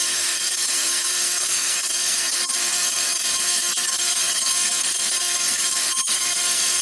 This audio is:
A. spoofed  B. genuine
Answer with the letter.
A